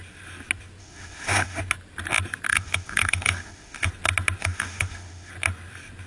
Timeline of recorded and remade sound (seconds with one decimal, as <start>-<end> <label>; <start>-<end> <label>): 0.0-0.8 recorded; 0.8-1.6 remade; 1.6-2.5 recorded; 2.5-3.9 remade; 3.9-4.4 recorded; 4.4-5.3 remade; 5.3-6.1 recorded